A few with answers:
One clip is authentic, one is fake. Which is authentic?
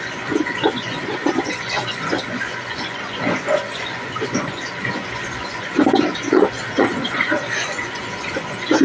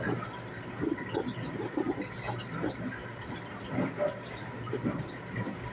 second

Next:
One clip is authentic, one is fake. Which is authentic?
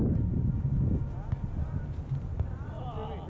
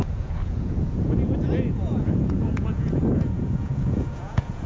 first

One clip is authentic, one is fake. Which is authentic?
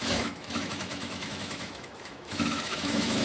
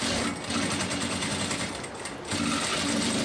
second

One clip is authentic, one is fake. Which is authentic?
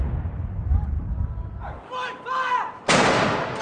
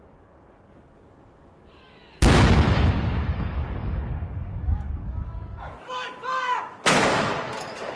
first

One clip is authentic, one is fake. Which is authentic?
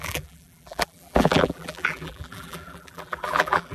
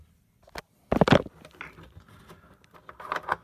second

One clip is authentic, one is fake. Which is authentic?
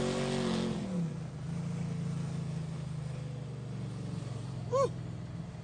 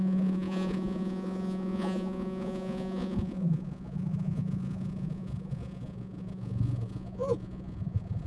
first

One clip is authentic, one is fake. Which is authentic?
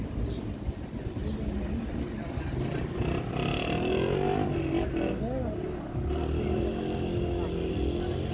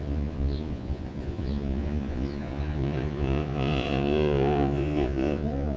first